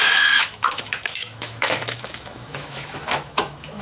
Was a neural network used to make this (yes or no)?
yes